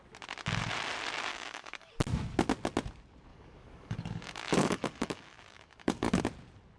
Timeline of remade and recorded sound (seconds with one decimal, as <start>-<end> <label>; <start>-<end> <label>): 0.0-1.3 recorded; 1.3-1.9 remade; 1.9-3.3 recorded; 3.3-6.2 remade; 6.2-6.8 recorded